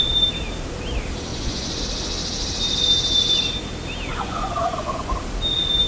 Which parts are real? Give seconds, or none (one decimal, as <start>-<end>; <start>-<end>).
0.0-1.3; 1.8-4.1; 5.1-5.9

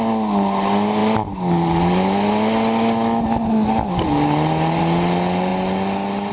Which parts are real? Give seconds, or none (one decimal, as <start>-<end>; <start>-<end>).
0.0-6.3

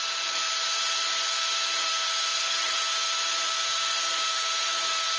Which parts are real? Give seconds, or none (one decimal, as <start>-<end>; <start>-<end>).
0.0-2.3; 2.8-5.2

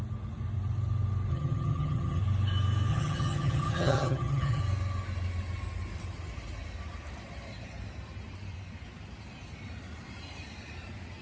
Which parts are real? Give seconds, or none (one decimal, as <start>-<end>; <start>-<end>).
0.0-1.3; 2.2-2.9; 4.6-11.2

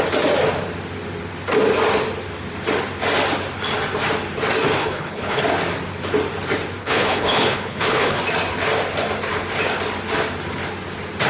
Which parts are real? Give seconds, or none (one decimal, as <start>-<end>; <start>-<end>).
0.0-4.8; 5.4-6.8; 8.2-11.3

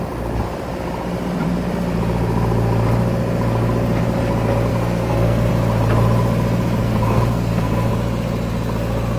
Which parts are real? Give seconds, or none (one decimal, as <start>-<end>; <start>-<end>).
0.0-4.7; 5.5-6.8; 7.9-9.2